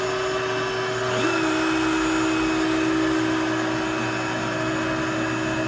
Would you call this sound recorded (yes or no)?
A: yes